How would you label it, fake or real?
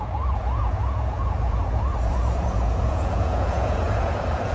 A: fake